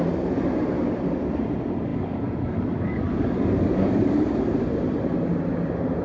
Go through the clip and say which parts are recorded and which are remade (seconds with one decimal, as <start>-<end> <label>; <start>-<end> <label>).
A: 0.0-1.9 recorded; 1.9-4.3 remade; 4.3-6.0 recorded